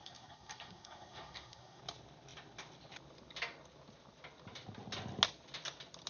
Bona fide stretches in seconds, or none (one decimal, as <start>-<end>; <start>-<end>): 1.8-6.1